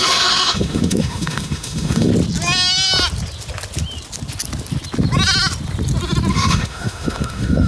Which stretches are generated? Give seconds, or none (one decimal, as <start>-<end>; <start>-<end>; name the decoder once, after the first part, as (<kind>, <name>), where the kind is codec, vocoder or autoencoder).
0.0-2.1 (autoencoder, DAC-VAE); 6.3-7.7